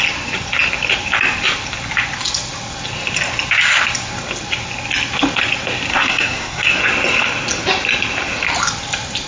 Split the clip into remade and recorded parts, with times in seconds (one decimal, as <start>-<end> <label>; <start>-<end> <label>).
0.0-5.9 recorded; 5.9-6.8 remade; 6.8-9.3 recorded